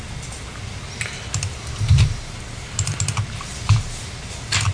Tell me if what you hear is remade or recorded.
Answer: recorded